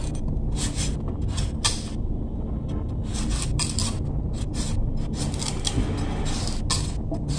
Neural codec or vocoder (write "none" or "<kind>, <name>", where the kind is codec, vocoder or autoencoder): none